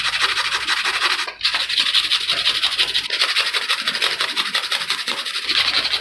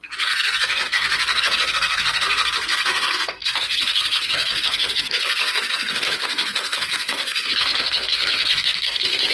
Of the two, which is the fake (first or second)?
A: second